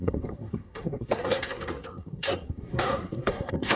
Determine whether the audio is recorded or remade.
remade